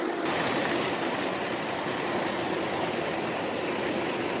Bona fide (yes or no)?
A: yes